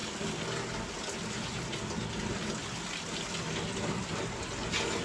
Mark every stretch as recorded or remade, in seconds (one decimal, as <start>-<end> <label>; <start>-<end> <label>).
0.0-5.0 recorded